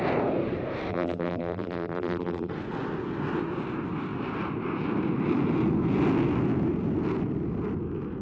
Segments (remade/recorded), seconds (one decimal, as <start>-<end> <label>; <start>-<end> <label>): 0.0-0.9 recorded; 0.9-2.5 remade; 2.5-8.2 recorded